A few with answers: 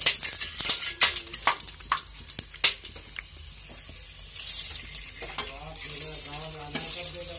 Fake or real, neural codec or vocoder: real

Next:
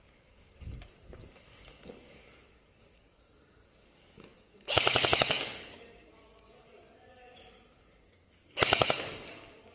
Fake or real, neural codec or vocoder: fake, codec, DAC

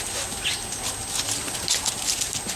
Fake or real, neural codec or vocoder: real